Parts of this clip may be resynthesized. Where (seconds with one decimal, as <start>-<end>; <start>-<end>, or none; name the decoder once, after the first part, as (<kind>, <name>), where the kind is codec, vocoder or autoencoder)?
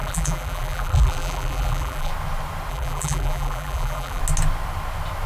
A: 0.0-2.1 (vocoder, BigVGAN v2); 2.7-4.2